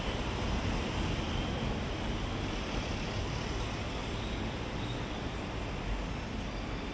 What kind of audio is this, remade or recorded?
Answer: recorded